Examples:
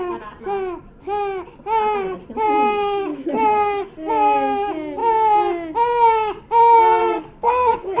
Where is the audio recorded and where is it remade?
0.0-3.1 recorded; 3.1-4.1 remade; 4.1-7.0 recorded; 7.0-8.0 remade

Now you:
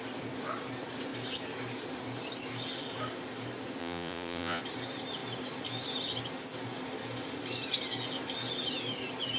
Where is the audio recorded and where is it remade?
0.0-3.8 recorded; 3.8-4.6 remade; 4.6-9.4 recorded

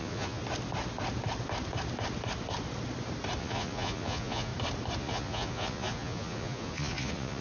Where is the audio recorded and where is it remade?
0.0-0.4 remade; 0.4-3.4 recorded; 3.4-4.5 remade; 4.5-5.0 recorded; 5.0-7.4 remade

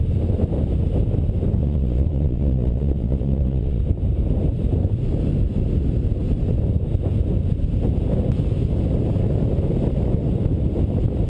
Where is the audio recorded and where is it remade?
0.0-1.6 recorded; 1.6-3.8 remade; 3.8-11.3 recorded

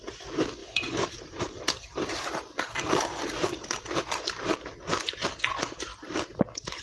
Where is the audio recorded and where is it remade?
0.0-0.6 recorded; 0.6-2.2 remade; 2.2-6.8 recorded